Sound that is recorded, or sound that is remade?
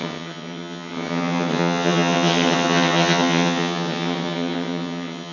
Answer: remade